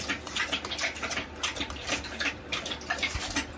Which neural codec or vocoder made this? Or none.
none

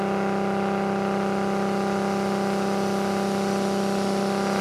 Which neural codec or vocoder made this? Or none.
none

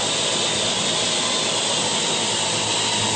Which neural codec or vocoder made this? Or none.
none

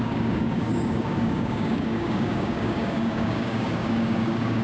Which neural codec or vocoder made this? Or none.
codec, DAC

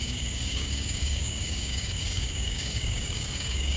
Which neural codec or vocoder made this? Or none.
codec, DAC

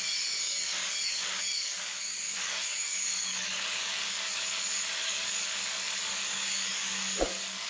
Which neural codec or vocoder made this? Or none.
codec, DAC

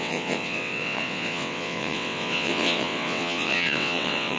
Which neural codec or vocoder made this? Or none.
vocoder, WaveNeXt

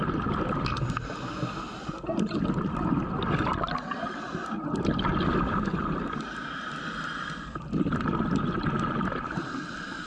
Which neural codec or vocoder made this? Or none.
none